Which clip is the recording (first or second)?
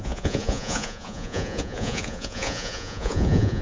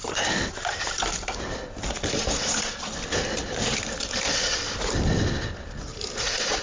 second